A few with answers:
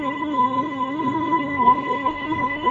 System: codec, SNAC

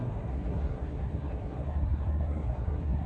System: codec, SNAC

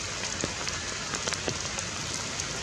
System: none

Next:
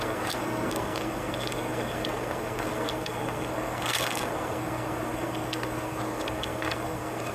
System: codec, SNAC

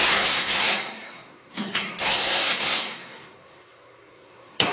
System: codec, SNAC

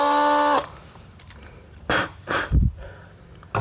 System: none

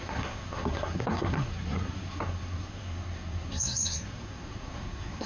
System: codec, SNAC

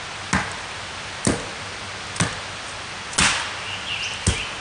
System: none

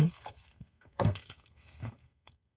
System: codec, SNAC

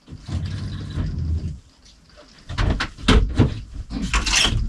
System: none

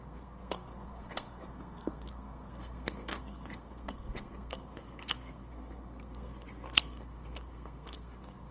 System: codec, SNAC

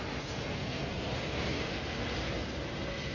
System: none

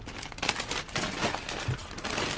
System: none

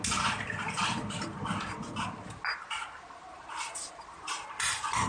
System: none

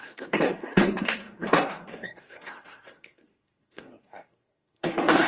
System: codec, SNAC